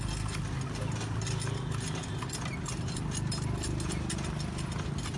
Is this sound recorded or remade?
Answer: recorded